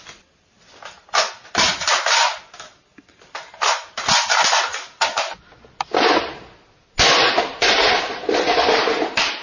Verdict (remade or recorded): recorded